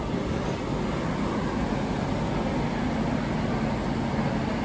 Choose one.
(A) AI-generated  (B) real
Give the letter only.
B